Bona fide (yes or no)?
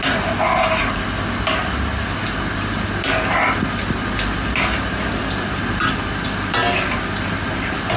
yes